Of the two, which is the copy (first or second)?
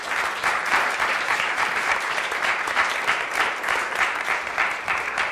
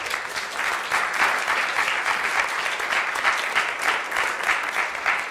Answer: first